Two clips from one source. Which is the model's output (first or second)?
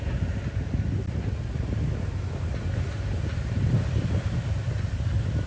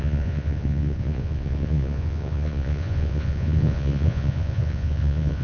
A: second